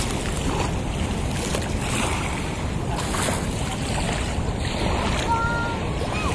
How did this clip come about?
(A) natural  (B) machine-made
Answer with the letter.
A